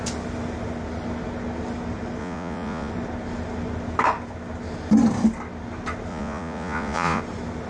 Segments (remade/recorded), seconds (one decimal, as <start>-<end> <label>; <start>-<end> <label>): 0.0-2.2 recorded; 2.2-2.9 remade; 2.9-6.1 recorded; 6.1-7.2 remade; 7.2-7.7 recorded